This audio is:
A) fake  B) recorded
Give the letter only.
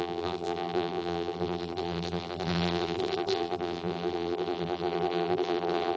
A